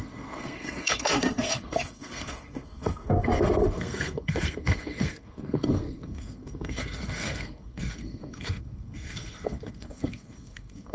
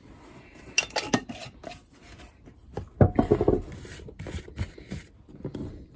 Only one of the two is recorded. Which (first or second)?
second